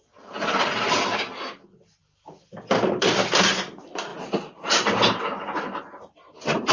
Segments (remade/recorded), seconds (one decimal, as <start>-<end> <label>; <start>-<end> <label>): 0.0-6.7 recorded